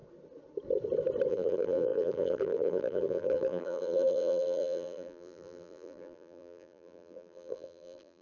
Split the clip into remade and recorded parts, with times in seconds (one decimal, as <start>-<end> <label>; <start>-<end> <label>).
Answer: 0.0-1.3 recorded; 1.3-8.2 remade

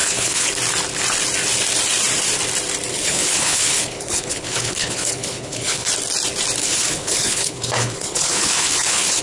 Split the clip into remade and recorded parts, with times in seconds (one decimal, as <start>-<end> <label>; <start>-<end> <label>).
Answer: 0.0-0.5 remade; 0.5-2.9 recorded; 2.9-5.9 remade; 5.9-6.6 recorded; 6.6-9.2 remade

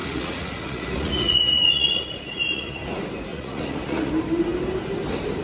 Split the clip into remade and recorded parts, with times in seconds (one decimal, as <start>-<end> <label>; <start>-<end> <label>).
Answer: 0.0-2.8 remade; 2.8-3.3 recorded; 3.3-4.1 remade; 4.1-5.4 recorded